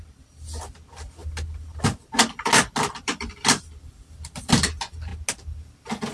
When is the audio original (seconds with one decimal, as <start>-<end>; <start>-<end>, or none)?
0.0-6.1